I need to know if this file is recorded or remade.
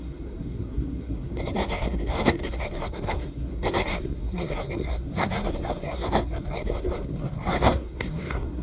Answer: remade